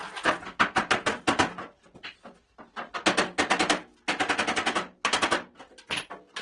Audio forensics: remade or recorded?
recorded